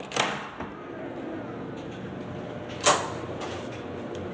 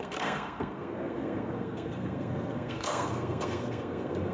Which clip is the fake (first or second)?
second